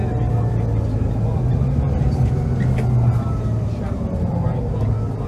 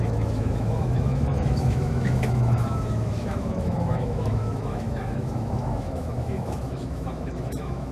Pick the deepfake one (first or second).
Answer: second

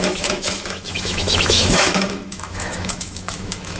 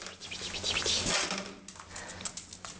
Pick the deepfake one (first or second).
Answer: first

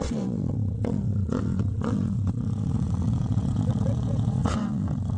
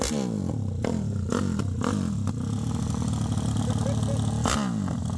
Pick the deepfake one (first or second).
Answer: first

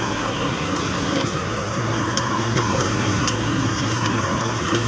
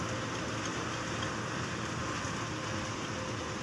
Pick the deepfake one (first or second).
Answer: first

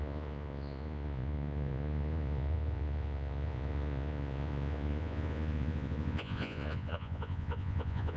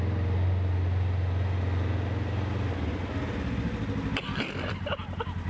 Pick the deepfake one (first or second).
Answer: first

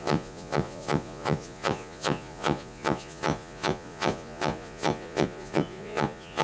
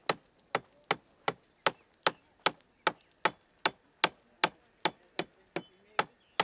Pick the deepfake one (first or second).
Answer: first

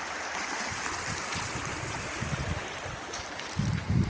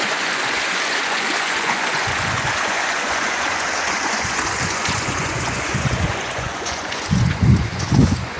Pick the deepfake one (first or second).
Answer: second